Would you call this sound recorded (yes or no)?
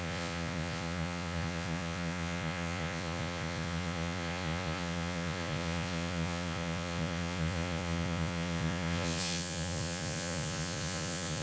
no